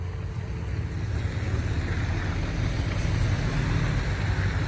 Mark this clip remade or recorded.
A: recorded